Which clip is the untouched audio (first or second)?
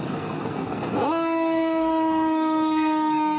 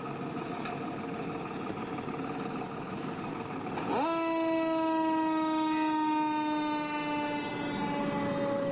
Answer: second